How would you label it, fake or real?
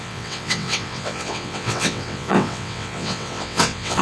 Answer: fake